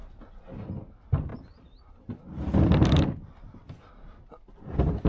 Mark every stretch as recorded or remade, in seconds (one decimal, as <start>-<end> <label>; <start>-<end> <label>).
0.0-5.1 recorded